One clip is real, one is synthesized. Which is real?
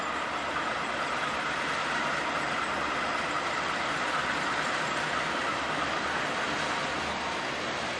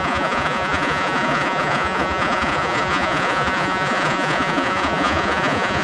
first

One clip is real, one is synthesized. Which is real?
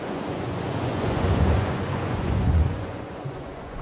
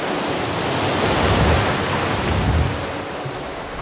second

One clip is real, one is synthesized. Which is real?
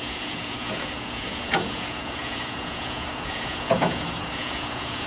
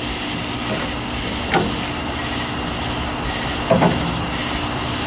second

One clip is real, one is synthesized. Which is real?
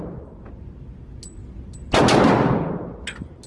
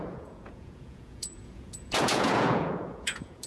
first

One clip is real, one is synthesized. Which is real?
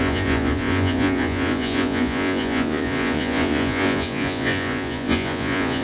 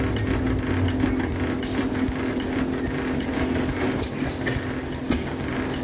second